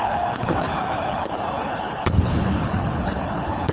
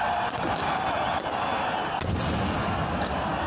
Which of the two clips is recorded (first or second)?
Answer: second